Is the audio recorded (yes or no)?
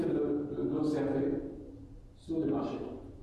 yes